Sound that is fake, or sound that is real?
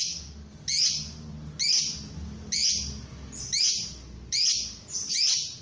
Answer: real